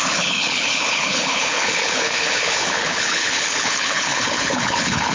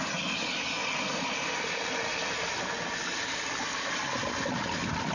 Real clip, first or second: second